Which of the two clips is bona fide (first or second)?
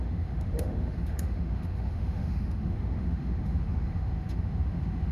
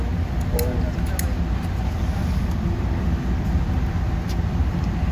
second